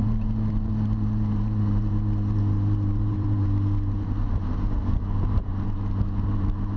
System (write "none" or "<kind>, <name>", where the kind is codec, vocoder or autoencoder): vocoder, BigVGAN v2